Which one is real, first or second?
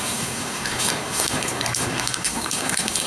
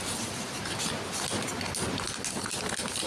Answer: second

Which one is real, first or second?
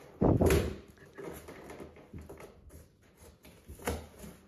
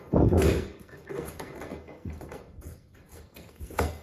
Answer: first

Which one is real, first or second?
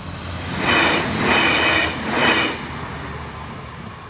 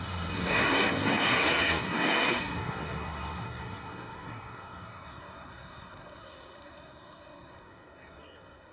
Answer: first